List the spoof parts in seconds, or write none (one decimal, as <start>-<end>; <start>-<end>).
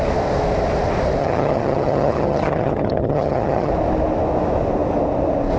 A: 1.2-3.7